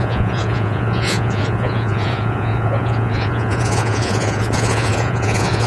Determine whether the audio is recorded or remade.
remade